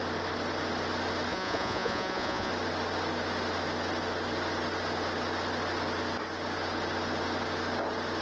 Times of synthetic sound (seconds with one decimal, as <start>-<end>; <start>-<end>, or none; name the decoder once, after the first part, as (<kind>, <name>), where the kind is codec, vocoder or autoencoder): 1.3-2.5 (vocoder, Vocos)